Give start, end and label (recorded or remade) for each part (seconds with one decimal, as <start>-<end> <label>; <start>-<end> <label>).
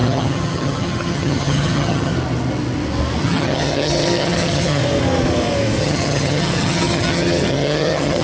0.0-2.1 remade; 2.1-3.2 recorded; 3.2-4.8 remade; 4.8-5.8 recorded; 5.8-8.2 remade